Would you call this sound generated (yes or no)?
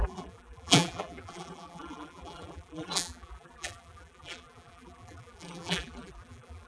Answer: yes